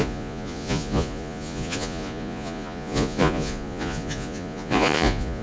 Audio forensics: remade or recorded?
remade